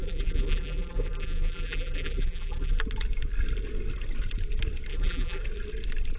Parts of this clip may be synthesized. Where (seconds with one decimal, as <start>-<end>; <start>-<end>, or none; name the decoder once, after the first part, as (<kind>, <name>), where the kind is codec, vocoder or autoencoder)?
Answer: 0.0-2.8 (vocoder, BigVGAN v2); 4.9-5.4